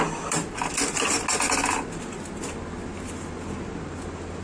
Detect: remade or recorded recorded